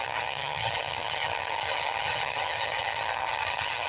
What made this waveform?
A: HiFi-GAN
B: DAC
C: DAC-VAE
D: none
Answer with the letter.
A